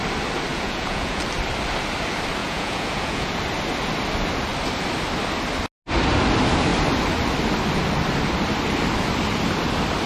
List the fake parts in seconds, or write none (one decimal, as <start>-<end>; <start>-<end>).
0.5-1.2; 2.4-3.4